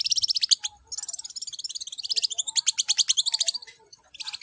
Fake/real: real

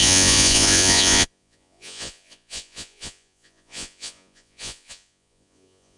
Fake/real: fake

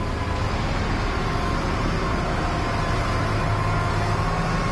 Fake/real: real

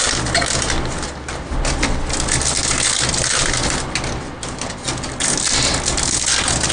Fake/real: real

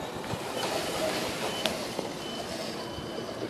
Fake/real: real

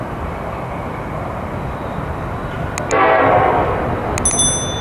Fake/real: real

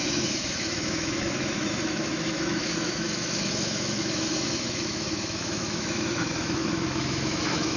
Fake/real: fake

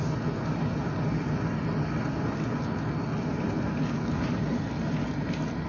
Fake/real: real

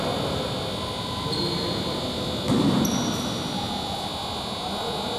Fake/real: real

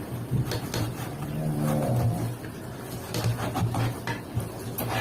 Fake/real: real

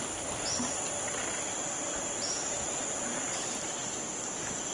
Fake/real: real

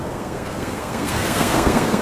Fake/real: fake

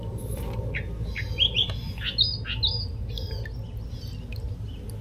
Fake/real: real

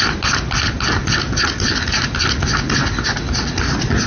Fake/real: real